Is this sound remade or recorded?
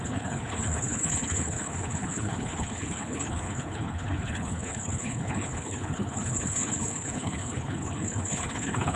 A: remade